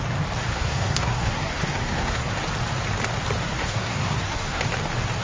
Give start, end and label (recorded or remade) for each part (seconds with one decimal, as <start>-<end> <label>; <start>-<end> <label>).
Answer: 0.0-0.4 recorded; 0.4-2.3 remade; 2.3-3.6 recorded; 3.6-4.6 remade; 4.6-5.2 recorded